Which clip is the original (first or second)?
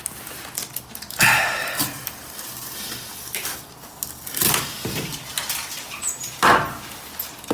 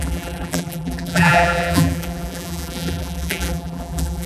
first